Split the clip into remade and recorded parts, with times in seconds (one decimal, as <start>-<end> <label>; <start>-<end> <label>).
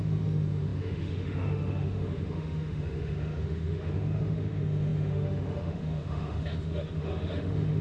0.0-7.8 remade